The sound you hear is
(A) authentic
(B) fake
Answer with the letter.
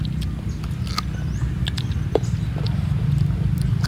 A